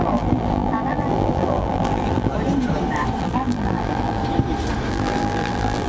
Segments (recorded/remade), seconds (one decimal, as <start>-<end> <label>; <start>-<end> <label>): 0.0-2.3 remade; 2.3-3.2 recorded; 3.2-4.2 remade; 4.2-4.9 recorded; 4.9-5.9 remade